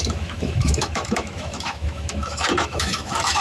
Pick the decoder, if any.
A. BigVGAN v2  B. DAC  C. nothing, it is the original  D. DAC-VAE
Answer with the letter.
D